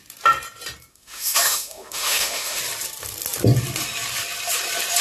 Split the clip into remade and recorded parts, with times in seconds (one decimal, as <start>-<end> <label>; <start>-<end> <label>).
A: 0.0-0.9 recorded; 0.9-2.6 remade; 2.6-5.0 recorded